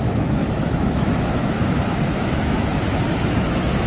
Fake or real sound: fake